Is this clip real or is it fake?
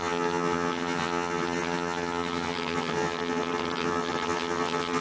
fake